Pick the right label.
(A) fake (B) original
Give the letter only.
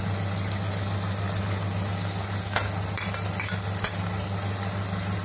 B